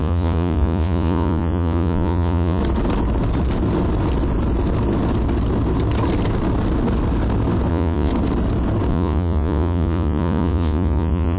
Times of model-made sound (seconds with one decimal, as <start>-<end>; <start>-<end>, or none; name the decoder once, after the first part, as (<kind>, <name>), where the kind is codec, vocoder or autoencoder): 0.0-2.6 (vocoder, Vocos); 7.7-8.1; 8.9-11.4